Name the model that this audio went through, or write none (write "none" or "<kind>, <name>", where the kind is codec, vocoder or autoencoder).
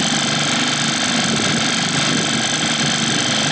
none